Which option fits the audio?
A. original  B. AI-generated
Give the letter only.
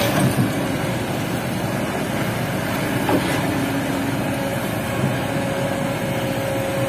A